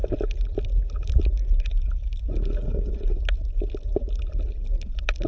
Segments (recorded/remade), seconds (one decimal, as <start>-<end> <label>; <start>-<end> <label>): 0.0-5.3 recorded